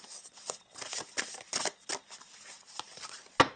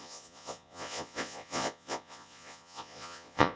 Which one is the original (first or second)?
first